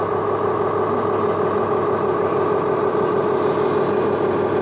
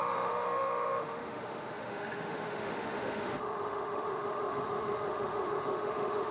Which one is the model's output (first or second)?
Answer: second